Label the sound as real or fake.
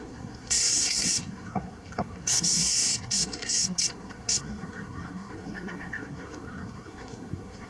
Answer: fake